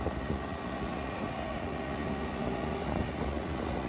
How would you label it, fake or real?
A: fake